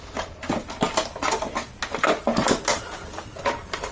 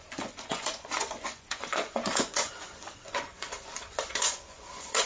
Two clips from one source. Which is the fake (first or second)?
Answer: second